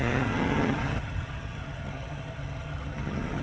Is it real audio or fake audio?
fake